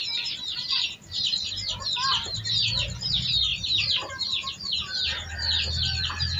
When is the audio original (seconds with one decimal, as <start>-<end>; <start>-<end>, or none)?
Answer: 0.0-6.4